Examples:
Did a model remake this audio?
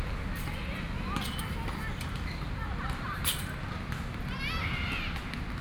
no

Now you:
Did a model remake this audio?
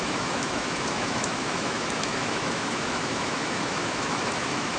yes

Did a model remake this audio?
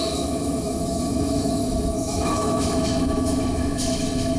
yes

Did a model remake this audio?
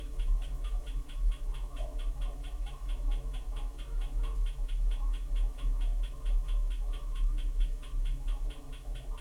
yes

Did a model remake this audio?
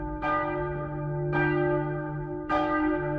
yes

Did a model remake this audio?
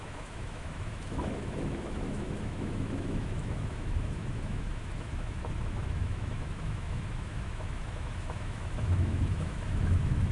yes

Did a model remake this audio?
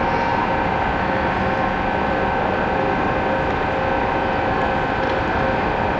no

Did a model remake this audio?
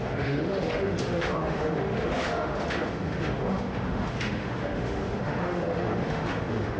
yes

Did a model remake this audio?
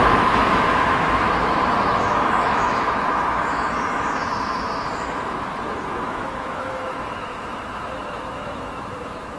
yes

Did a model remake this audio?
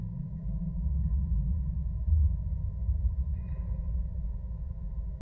yes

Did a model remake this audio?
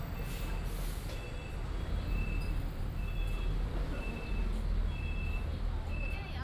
no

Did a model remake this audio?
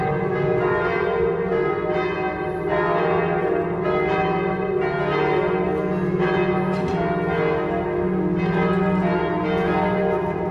no